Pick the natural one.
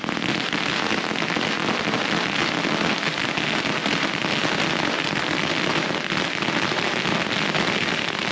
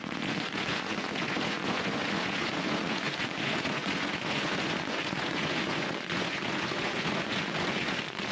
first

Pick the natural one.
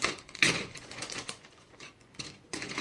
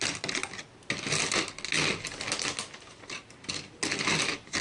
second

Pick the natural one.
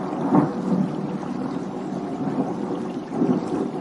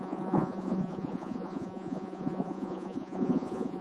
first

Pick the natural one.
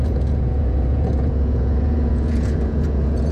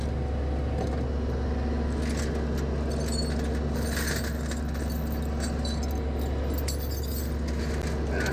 second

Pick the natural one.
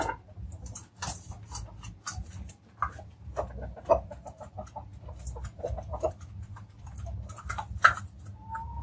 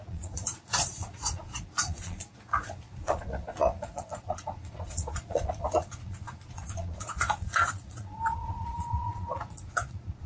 first